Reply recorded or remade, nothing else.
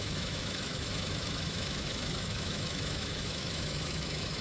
remade